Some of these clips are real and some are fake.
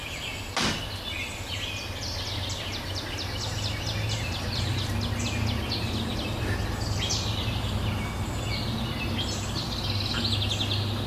real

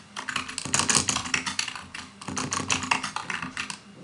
real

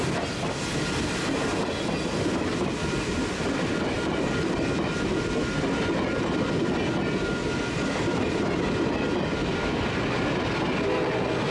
real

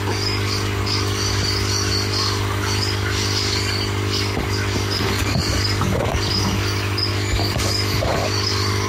fake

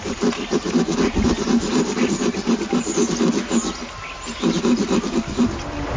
real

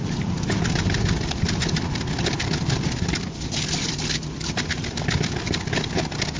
real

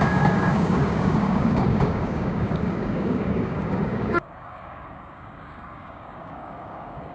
fake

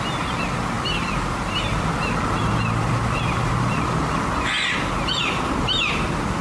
real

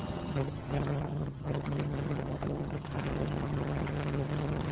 fake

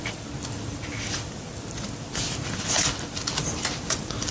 real